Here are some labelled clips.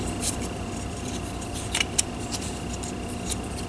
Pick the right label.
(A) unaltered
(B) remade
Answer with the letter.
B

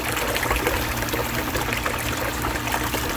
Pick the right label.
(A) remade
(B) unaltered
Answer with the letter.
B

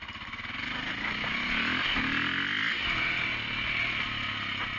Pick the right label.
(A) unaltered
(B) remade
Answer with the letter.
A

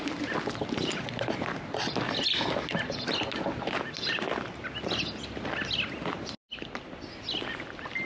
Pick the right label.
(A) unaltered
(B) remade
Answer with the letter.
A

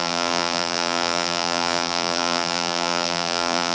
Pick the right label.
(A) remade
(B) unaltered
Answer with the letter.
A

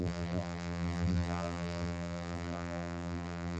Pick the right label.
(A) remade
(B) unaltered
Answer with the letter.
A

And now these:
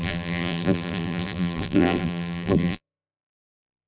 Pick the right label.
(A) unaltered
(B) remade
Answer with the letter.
B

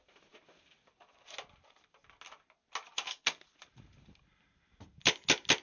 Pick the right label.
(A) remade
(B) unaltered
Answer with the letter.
B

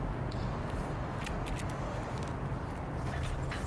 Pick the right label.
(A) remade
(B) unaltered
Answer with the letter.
A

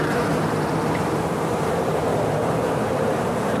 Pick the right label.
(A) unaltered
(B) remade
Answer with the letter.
B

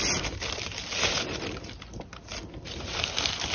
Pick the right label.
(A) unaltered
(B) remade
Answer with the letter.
A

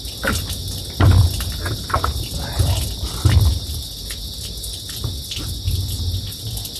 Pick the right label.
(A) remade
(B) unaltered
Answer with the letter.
B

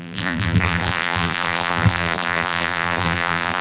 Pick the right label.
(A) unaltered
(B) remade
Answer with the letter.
B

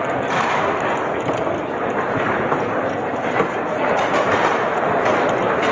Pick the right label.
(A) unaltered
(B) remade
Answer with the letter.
B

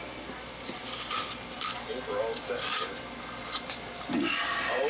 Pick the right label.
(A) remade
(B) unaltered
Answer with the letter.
A